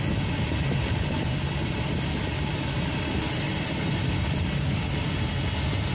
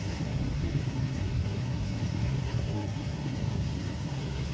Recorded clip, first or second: first